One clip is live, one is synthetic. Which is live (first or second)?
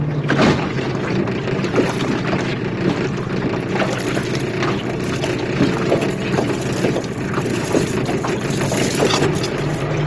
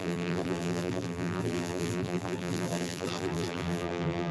first